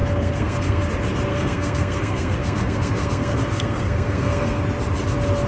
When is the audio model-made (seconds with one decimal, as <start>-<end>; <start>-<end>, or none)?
0.0-0.9; 1.3-4.6